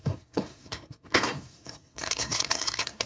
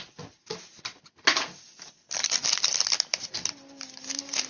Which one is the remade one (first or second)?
first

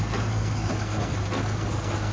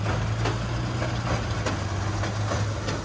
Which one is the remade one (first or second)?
first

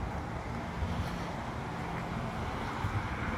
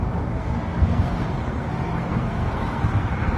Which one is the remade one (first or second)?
second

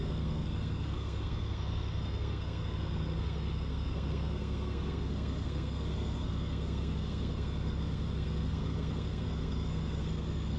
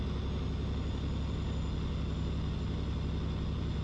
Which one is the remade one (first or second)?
first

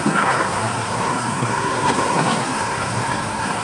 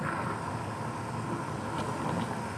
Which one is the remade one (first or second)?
first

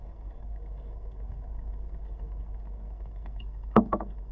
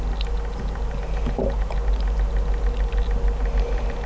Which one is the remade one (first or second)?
first